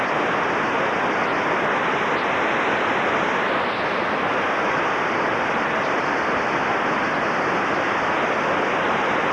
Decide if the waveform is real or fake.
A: real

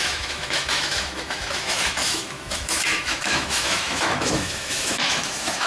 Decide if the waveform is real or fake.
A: fake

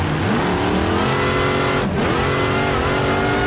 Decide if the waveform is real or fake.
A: real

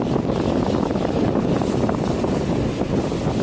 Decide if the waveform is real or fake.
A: real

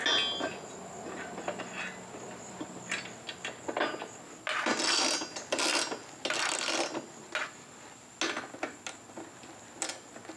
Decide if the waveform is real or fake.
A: real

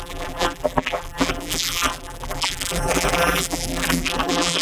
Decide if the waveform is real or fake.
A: fake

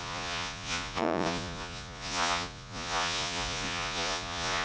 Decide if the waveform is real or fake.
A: fake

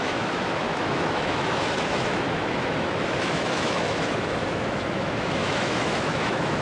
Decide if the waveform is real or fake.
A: fake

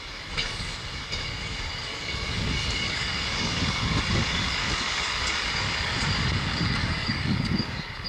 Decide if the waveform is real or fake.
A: fake